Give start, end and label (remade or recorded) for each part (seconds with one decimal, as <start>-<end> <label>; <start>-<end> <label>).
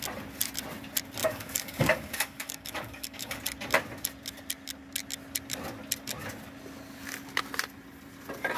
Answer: 0.0-1.2 recorded; 1.2-3.4 remade; 3.4-8.6 recorded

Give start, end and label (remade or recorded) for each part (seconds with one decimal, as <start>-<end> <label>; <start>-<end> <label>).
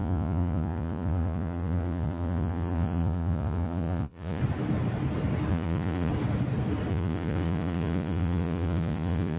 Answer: 0.0-4.4 remade; 4.4-5.5 recorded; 5.5-6.1 remade; 6.1-6.9 recorded; 6.9-9.4 remade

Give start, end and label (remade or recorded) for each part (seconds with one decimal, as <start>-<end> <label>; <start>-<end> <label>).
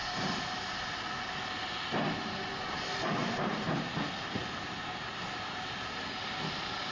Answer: 0.0-0.6 remade; 0.6-3.2 recorded; 3.2-3.9 remade; 3.9-6.9 recorded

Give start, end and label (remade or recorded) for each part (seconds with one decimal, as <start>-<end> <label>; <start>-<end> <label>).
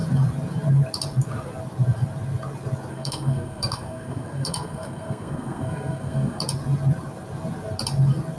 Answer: 0.0-2.9 recorded; 2.9-6.4 remade; 6.4-8.4 recorded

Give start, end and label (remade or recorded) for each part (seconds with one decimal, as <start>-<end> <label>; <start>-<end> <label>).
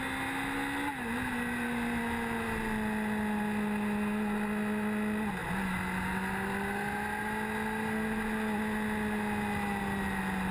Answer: 0.0-10.5 recorded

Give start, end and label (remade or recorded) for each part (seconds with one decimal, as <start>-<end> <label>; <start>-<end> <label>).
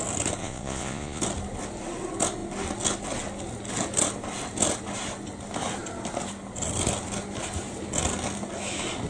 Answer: 0.0-0.4 recorded; 0.4-1.2 remade; 1.2-9.1 recorded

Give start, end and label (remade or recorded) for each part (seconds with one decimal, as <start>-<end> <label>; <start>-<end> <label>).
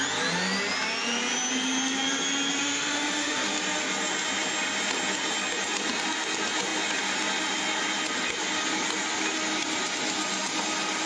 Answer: 0.0-2.6 recorded; 2.6-3.5 remade; 3.5-11.1 recorded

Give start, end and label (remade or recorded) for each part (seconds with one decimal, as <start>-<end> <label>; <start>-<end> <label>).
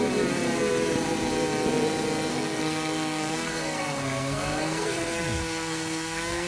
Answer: 0.0-2.3 recorded; 2.3-6.5 remade